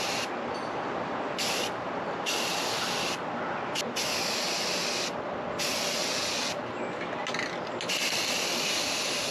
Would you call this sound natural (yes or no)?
yes